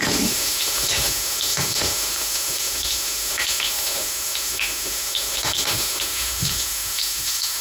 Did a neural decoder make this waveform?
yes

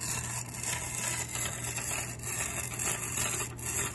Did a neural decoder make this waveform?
no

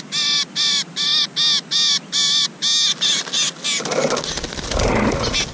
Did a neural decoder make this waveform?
no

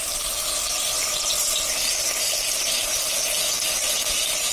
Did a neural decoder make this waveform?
no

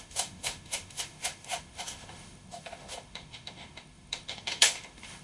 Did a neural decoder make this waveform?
yes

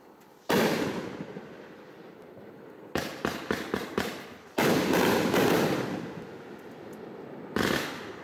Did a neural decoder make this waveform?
no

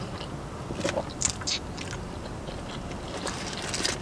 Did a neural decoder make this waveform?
no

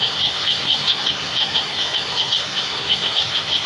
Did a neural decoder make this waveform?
yes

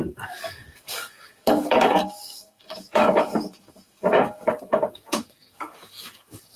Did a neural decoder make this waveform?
yes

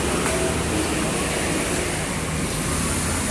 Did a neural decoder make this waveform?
no